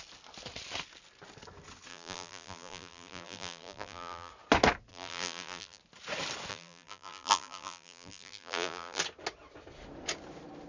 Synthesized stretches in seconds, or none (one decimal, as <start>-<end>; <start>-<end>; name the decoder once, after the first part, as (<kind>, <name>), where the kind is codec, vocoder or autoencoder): 1.9-4.3 (vocoder, BigVGAN v2); 4.9-5.8; 6.5-9.0